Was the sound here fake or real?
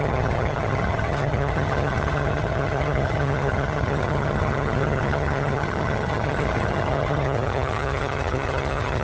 fake